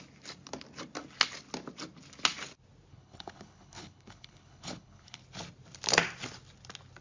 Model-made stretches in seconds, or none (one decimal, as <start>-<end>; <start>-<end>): 2.9-5.2